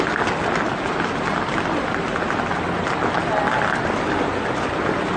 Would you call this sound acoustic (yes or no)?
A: yes